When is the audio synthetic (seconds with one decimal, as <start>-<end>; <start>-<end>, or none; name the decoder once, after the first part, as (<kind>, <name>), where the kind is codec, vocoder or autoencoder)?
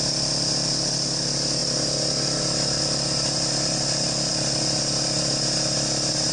none